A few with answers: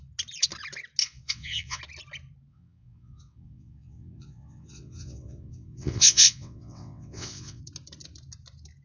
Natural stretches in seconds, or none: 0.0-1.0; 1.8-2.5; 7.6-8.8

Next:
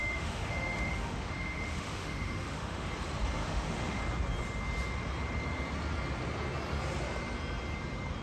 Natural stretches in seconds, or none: 2.9-3.4; 4.0-8.2